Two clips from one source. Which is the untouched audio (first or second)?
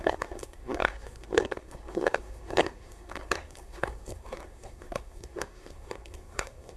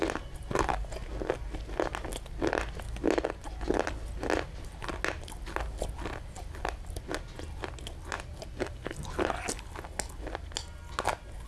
second